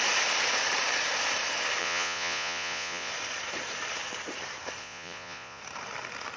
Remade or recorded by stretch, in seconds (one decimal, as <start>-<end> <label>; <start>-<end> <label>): 0.0-1.8 recorded; 1.8-3.1 remade; 3.1-4.8 recorded; 4.8-5.6 remade; 5.6-6.4 recorded